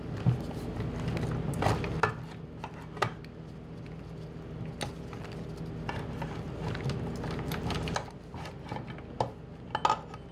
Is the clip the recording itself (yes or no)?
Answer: yes